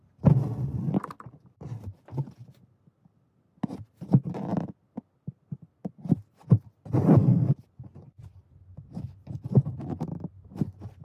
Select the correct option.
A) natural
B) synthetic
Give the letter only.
A